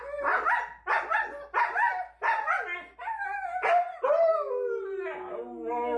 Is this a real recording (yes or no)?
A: yes